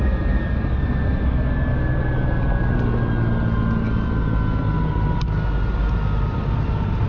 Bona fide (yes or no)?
yes